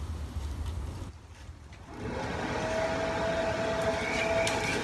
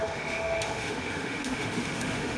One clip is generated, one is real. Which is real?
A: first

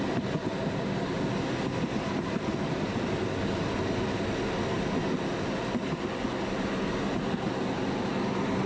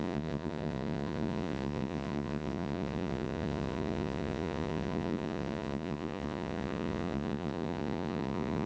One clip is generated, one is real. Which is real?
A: first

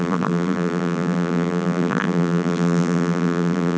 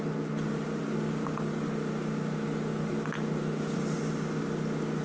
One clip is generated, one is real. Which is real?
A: second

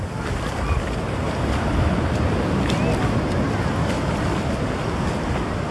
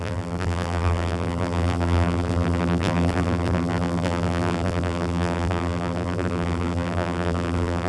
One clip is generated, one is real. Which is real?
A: first